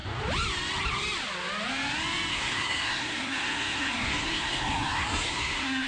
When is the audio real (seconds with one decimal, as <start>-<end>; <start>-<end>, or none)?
0.0-2.3